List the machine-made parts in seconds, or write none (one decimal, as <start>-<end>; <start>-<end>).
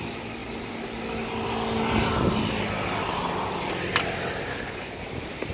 4.5-5.0